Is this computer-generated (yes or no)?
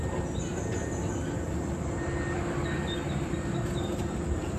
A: no